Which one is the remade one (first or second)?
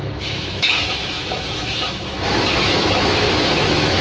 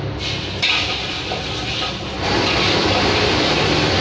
first